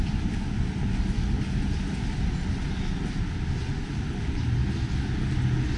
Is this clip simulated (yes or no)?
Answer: no